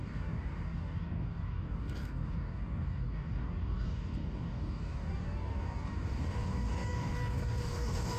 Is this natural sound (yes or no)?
no